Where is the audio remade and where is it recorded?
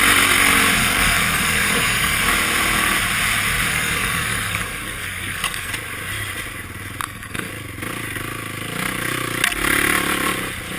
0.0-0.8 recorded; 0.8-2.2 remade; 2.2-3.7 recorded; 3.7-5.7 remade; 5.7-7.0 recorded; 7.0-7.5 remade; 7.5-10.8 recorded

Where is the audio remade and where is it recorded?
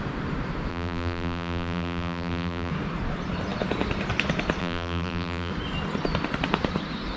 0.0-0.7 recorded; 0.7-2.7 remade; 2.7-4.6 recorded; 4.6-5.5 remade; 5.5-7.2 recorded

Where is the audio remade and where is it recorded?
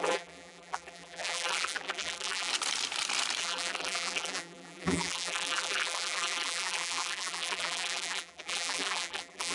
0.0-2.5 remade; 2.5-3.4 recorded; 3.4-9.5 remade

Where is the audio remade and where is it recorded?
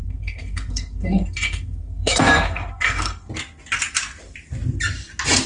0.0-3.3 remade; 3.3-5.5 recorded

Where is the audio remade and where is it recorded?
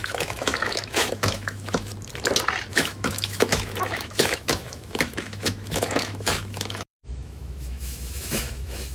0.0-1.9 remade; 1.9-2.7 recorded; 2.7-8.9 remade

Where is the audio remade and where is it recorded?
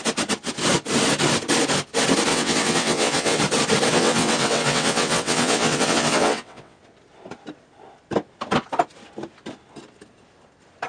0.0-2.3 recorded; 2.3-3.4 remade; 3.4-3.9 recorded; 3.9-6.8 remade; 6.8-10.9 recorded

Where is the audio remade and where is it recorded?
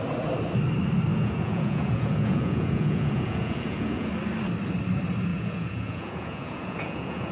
0.0-1.1 recorded; 1.1-4.1 remade; 4.1-5.3 recorded; 5.3-7.3 remade